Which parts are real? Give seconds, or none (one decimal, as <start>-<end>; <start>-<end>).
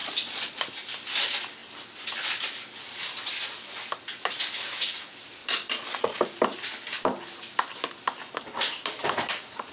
0.6-5.4; 6.2-9.7